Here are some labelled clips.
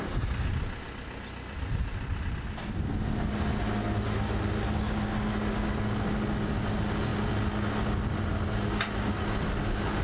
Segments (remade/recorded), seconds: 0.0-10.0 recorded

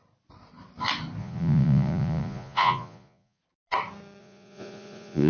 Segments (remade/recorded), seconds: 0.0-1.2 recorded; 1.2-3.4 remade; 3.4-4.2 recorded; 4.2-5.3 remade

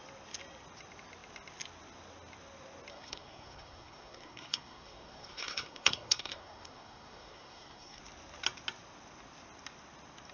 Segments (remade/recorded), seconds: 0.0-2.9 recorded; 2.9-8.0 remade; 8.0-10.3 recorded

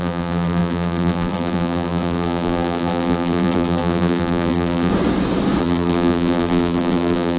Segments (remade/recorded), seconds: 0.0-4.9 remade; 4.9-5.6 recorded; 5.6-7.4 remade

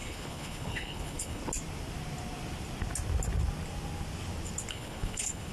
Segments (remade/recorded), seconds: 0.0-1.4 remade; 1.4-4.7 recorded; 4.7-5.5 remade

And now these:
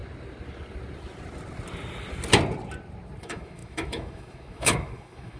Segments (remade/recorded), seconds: 0.0-3.2 recorded; 3.2-5.4 remade